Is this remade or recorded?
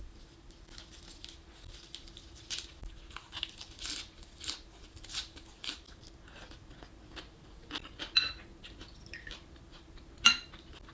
recorded